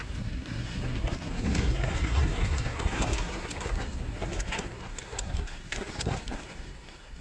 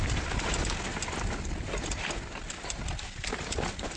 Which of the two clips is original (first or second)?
second